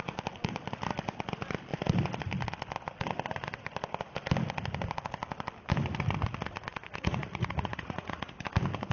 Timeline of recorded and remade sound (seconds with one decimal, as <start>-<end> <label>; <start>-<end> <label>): 0.0-6.7 recorded; 6.7-8.4 remade; 8.4-8.9 recorded